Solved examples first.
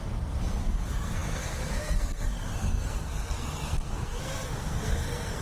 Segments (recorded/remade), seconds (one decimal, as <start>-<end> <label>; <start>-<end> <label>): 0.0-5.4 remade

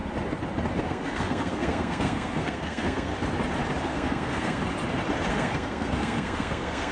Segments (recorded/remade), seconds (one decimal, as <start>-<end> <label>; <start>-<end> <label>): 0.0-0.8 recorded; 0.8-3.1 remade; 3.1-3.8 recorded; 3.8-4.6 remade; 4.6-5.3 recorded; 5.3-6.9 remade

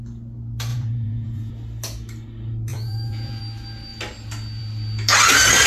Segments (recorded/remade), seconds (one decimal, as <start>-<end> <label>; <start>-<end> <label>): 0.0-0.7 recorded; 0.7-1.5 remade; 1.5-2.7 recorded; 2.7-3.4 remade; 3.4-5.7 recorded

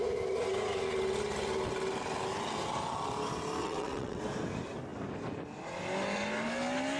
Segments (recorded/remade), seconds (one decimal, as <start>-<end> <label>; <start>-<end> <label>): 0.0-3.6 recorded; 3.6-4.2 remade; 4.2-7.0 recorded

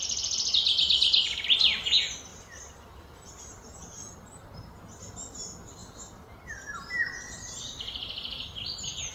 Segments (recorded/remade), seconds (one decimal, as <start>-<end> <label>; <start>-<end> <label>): 0.0-9.1 recorded